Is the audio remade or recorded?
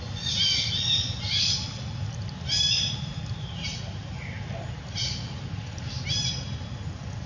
recorded